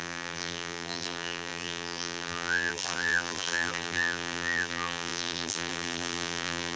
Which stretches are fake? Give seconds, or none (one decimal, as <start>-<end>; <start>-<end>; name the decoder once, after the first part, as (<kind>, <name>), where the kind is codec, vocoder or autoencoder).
0.0-6.8 (vocoder, BigVGAN v2)